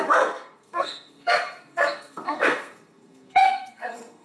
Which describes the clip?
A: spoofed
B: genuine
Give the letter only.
A